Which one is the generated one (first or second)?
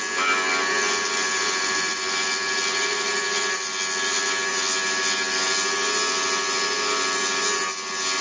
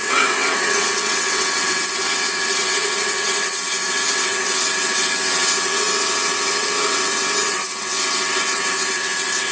second